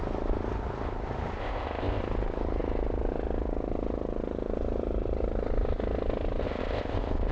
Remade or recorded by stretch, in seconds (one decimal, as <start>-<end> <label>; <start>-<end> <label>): 0.0-1.4 recorded; 1.4-2.0 remade; 2.0-6.4 recorded; 6.4-7.3 remade